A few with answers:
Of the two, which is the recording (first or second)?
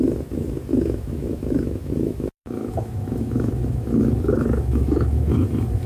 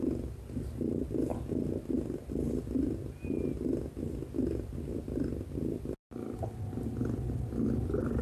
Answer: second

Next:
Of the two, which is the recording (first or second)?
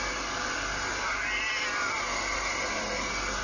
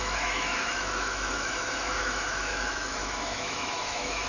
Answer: first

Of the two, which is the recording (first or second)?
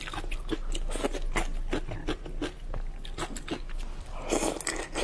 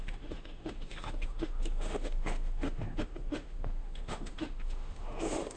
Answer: first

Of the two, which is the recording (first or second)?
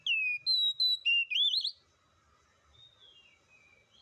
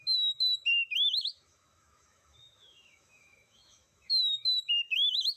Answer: first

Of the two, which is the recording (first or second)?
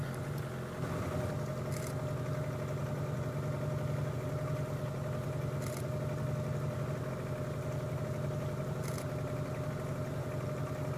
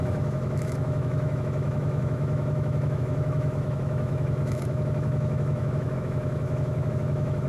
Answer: first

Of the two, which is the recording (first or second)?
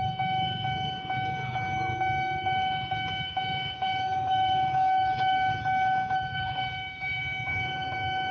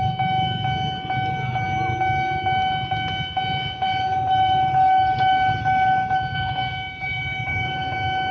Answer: second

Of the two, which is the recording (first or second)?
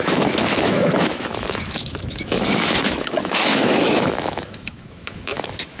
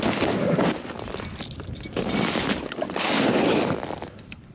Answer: second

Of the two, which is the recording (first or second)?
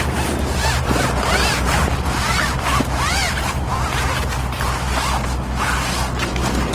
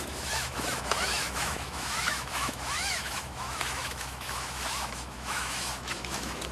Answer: first